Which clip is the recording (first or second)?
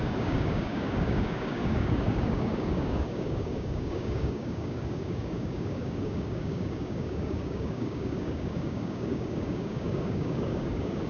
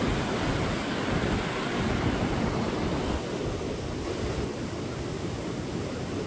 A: second